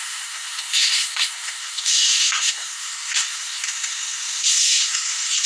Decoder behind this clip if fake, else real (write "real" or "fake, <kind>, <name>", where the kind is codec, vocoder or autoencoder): fake, codec, SNAC